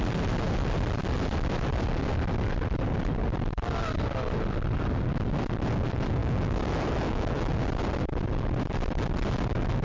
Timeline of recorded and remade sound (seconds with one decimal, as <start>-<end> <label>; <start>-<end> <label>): 0.0-6.2 recorded; 6.2-7.5 remade; 7.5-9.8 recorded